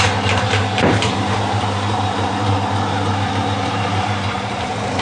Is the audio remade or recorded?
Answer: remade